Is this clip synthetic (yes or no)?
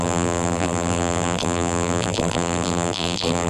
yes